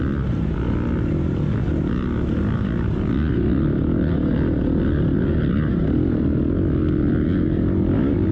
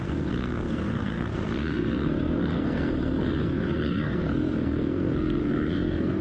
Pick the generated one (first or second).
second